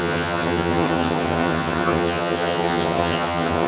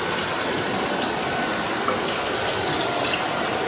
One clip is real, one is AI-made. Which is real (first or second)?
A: second